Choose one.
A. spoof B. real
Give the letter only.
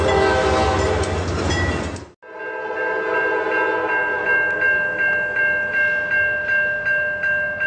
B